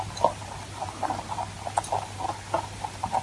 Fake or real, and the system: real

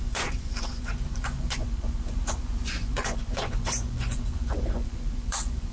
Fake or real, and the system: fake, vocoder, Vocos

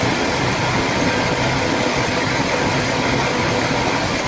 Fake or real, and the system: real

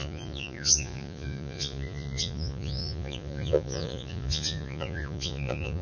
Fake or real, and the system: fake, vocoder, Vocos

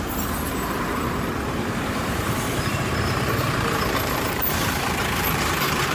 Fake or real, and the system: fake, vocoder, BigVGAN v2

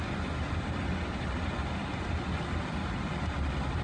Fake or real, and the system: real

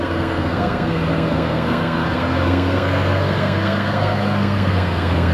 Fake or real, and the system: fake, codec, SNAC